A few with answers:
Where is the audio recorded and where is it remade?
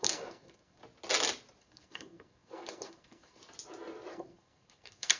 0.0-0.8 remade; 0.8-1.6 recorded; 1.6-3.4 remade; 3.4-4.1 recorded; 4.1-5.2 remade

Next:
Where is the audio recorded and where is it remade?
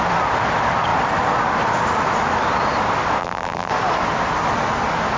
0.0-3.2 recorded; 3.2-3.7 remade; 3.7-5.2 recorded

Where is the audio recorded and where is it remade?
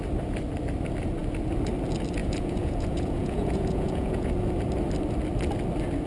0.0-2.2 recorded; 2.2-4.3 remade; 4.3-6.1 recorded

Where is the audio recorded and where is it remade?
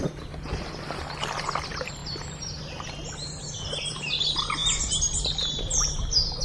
0.0-6.4 recorded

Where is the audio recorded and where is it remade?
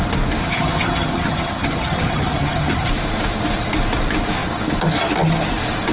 0.0-0.4 recorded; 0.4-2.9 remade; 2.9-5.9 recorded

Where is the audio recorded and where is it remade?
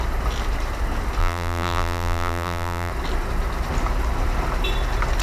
0.0-1.2 recorded; 1.2-2.9 remade; 2.9-5.2 recorded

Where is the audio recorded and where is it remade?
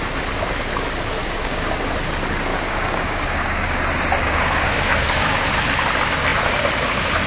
0.0-1.2 recorded; 1.2-1.8 remade; 1.8-2.5 recorded; 2.5-3.8 remade; 3.8-4.2 recorded; 4.2-5.4 remade; 5.4-7.3 recorded